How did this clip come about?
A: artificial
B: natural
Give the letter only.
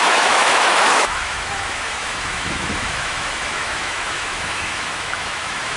A